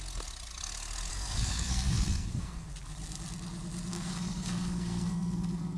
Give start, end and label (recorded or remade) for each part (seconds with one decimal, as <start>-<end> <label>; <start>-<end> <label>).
0.0-1.1 recorded; 1.1-2.7 remade; 2.7-3.9 recorded; 3.9-5.8 remade